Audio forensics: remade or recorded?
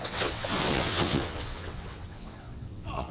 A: remade